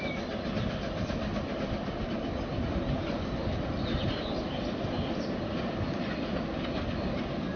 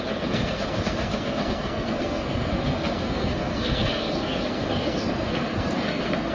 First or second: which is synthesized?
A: second